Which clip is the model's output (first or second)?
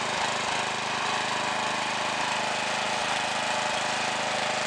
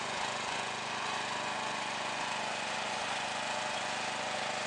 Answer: second